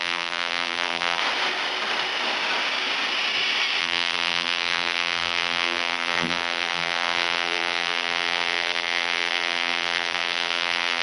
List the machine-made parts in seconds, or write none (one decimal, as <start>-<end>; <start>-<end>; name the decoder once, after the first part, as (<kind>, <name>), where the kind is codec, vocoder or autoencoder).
0.0-1.2 (vocoder, BigVGAN v2); 3.8-11.0